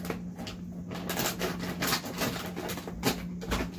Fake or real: real